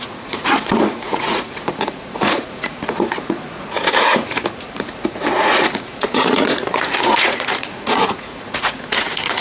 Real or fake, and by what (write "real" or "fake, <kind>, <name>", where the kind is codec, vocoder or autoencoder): fake, vocoder, Vocos